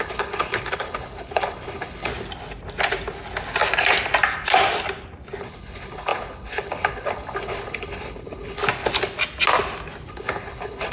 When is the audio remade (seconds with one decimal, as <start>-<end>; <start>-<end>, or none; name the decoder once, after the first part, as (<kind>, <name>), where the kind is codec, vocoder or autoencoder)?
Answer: 0.0-2.1 (codec, HILCodec); 5.4-8.6; 10.1-10.9

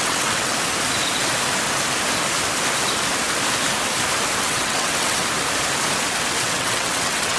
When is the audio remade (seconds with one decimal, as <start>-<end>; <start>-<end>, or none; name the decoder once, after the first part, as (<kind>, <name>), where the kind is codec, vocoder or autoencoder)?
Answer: 0.0-0.5 (vocoder, WaveNeXt); 4.4-5.2; 6.4-7.4

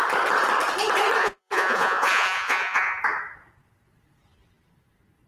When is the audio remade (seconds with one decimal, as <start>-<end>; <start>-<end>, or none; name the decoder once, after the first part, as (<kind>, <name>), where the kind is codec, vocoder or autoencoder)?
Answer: 1.2-3.0 (vocoder, Vocos)

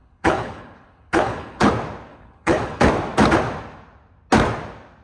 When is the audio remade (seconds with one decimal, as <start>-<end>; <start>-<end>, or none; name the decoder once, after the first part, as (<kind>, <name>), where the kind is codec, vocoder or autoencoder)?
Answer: 0.0-1.7 (codec, HILCodec); 2.1-2.8

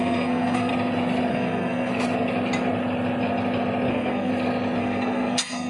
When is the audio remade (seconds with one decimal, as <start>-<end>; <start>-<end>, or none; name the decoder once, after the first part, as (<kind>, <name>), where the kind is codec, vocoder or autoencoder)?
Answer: 0.0-0.7 (codec, SNAC); 1.3-1.9; 3.9-4.3; 4.8-5.7